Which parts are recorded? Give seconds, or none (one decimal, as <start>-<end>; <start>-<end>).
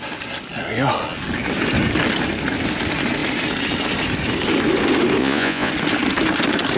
0.0-5.2; 5.7-6.8